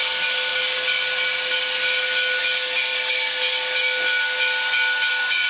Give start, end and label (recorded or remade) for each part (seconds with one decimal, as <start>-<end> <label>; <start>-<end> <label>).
0.0-5.5 recorded